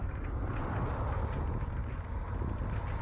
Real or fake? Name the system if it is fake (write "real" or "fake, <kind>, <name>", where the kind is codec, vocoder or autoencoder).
real